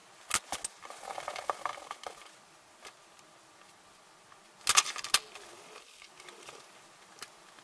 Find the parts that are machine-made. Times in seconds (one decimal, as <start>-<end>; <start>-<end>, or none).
none